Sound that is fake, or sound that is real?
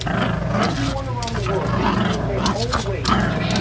real